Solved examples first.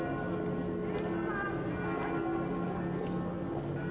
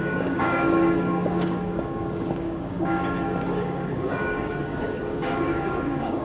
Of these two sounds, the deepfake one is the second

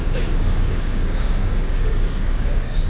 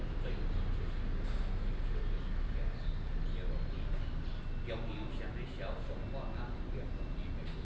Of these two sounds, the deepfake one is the first